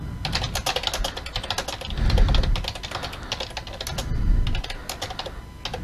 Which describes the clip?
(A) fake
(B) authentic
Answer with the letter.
B